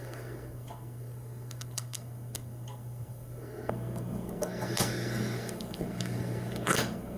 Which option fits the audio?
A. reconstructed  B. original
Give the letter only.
A